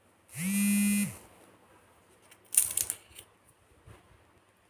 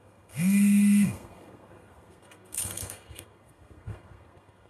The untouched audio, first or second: first